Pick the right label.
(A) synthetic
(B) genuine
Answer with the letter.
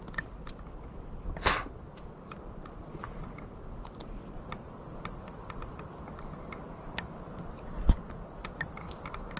B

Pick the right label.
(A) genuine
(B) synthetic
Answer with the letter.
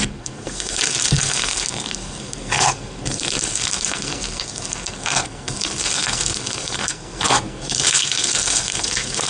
B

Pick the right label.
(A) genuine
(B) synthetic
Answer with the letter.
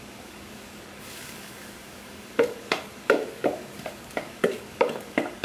B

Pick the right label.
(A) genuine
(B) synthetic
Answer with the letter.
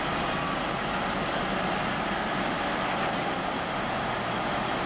A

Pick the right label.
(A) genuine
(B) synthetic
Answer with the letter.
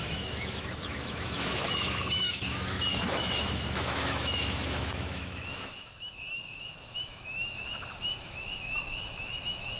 B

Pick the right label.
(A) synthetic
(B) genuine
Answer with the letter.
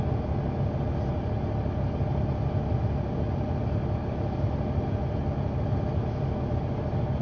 B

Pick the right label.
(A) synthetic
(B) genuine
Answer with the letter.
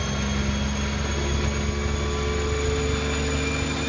B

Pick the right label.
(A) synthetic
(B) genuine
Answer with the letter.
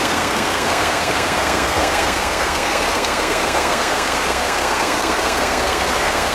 A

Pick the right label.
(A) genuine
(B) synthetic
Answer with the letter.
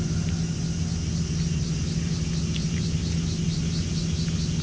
A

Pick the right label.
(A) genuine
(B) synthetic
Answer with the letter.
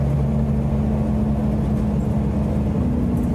A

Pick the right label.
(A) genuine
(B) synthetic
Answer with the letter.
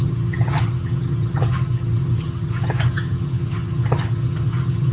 B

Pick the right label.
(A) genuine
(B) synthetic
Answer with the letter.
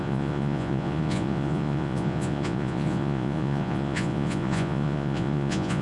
B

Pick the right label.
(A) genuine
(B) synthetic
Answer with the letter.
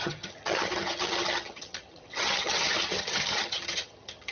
B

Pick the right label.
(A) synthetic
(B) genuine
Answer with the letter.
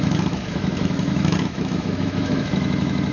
A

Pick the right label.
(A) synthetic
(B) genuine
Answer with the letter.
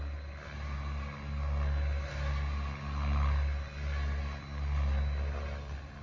B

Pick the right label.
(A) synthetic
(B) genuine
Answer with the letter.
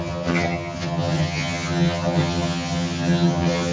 A